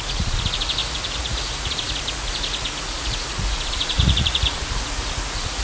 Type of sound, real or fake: fake